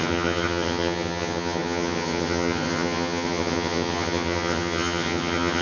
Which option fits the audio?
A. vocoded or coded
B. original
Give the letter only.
A